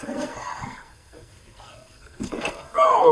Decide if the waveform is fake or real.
fake